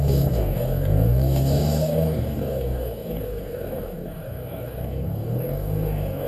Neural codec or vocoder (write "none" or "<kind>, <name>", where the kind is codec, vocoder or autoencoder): codec, DAC